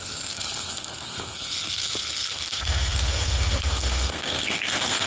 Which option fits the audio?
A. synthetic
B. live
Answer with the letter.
A